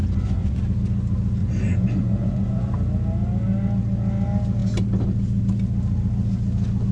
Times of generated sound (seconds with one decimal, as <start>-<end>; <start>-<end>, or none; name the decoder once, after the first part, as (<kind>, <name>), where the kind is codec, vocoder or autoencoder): 0.0-0.6 (vocoder, Vocos); 1.4-2.7